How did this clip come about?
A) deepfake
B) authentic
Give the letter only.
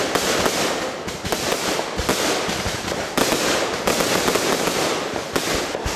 B